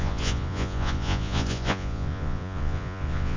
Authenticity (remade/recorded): remade